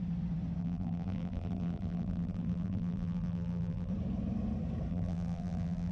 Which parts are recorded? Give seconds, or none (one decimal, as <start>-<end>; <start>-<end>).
0.0-0.6; 3.9-4.9